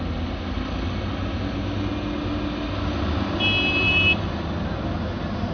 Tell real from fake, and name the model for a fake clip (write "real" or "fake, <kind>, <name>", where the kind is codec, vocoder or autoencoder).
real